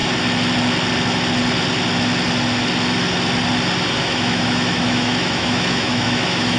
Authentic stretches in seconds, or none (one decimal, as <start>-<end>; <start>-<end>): 0.0-4.0